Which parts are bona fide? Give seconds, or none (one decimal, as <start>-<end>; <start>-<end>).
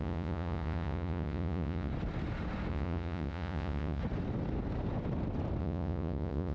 1.9-2.7; 4.0-5.6